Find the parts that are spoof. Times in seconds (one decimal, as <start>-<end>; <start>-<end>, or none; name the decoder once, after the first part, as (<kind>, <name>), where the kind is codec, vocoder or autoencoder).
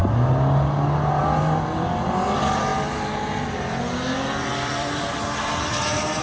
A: 4.5-5.5 (vocoder, BigVGAN v2)